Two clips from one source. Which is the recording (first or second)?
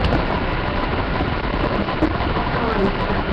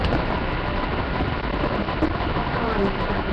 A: second